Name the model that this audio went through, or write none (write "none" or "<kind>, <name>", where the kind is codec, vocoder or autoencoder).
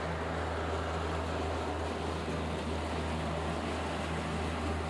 none